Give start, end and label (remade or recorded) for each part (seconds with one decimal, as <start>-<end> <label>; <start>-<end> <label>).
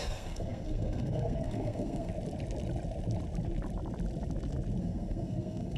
0.0-2.1 remade; 2.1-4.8 recorded; 4.8-5.8 remade